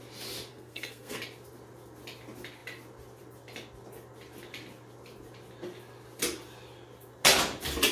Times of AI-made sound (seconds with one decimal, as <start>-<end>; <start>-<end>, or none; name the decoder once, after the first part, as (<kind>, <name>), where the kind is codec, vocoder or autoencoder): 0.5-1.2 (codec, SNAC)